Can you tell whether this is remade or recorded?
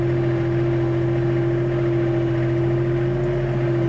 recorded